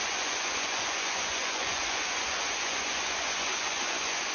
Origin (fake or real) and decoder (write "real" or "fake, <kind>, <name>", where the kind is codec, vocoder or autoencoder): fake, vocoder, Vocos